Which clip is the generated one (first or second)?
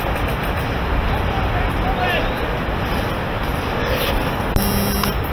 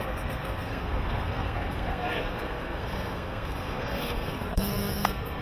second